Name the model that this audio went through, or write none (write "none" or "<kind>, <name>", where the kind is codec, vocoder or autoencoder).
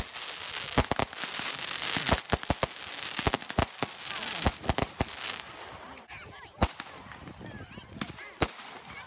none